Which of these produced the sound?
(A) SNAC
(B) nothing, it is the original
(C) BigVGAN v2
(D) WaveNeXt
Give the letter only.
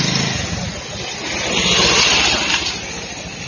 B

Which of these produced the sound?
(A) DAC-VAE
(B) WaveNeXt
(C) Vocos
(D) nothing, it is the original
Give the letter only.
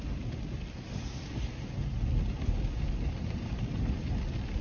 D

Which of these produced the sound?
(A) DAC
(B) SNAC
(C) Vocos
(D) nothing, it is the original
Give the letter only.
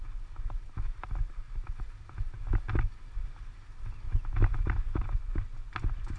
D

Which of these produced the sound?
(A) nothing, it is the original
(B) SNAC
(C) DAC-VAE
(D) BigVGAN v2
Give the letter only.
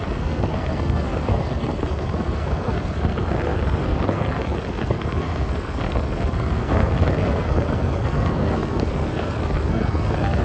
B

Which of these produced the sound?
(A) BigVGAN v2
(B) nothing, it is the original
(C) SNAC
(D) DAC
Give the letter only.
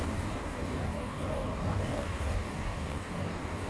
D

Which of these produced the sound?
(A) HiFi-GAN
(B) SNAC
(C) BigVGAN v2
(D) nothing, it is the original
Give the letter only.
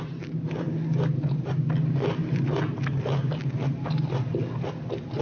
D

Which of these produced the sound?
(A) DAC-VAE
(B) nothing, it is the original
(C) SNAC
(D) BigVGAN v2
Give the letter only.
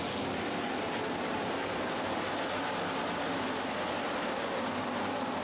B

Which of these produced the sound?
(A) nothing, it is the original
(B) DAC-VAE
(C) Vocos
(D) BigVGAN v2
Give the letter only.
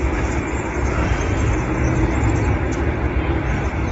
A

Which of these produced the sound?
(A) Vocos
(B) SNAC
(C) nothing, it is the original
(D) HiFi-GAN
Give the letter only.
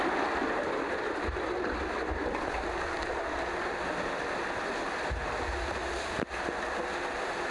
C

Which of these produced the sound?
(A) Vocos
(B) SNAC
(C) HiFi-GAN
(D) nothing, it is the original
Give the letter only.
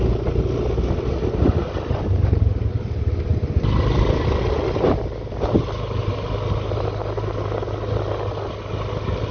D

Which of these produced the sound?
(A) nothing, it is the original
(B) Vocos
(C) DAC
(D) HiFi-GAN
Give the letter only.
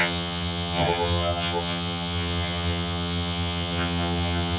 D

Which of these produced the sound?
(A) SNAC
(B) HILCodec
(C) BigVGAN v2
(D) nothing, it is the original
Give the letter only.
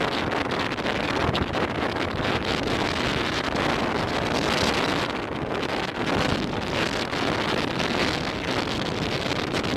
D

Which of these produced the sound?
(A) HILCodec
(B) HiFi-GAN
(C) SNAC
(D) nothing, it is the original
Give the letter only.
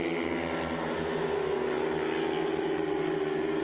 D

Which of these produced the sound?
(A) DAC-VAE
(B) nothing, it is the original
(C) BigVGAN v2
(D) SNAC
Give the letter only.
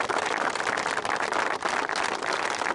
B